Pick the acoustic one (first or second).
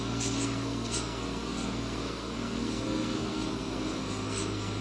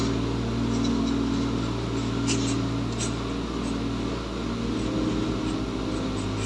second